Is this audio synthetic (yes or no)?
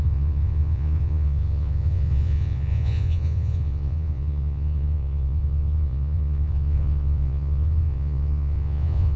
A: yes